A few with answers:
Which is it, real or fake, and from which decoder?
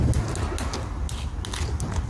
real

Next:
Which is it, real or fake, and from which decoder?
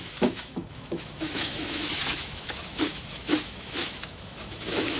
fake, autoencoder, DAC-VAE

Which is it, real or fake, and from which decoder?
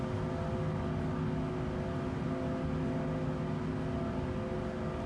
real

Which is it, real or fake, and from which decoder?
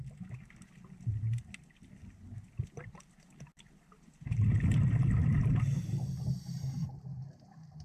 real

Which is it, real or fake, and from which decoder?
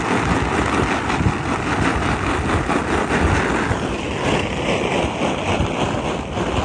real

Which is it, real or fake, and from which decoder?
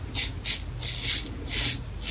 real